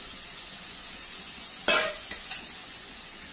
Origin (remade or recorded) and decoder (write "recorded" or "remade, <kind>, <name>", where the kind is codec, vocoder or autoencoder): remade, vocoder, Vocos